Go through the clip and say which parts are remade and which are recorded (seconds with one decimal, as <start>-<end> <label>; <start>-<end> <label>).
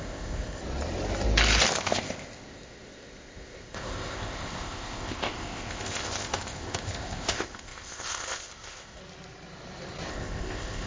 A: 0.0-0.6 remade; 0.6-1.8 recorded; 1.8-9.0 remade; 9.0-10.1 recorded; 10.1-10.9 remade